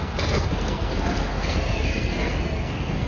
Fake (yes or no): yes